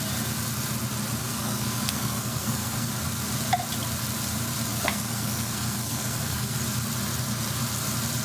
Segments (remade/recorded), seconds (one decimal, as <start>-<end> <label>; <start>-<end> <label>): 0.0-1.2 recorded; 1.2-2.9 remade; 2.9-4.7 recorded; 4.7-6.6 remade; 6.6-8.2 recorded